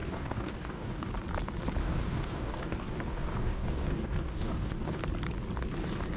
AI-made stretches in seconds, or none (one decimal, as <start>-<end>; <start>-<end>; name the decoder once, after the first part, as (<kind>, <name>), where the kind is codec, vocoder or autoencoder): 0.0-1.1 (codec, DAC); 1.8-5.0